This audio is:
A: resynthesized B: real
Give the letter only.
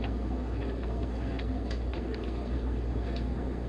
A